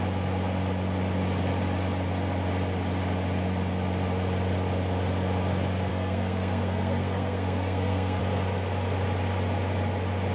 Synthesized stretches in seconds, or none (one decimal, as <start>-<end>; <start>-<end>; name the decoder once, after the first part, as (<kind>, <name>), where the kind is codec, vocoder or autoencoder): 5.9-8.2 (codec, SNAC)